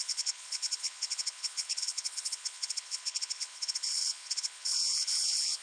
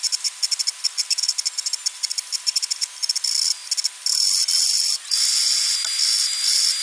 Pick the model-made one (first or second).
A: first